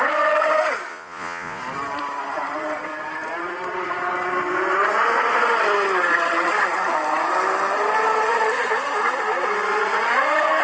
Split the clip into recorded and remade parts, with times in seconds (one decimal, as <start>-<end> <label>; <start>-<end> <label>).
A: 0.0-0.9 recorded; 0.9-1.6 remade; 1.6-10.6 recorded